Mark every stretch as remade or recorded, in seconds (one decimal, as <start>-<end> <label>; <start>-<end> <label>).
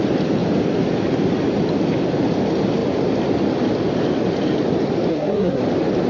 0.0-5.1 recorded; 5.1-5.6 remade; 5.6-6.1 recorded